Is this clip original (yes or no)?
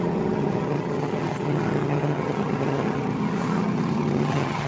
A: no